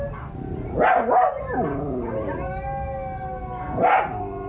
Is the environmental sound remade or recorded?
recorded